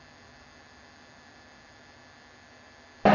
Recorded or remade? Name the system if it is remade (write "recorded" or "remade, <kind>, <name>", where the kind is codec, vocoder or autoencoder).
recorded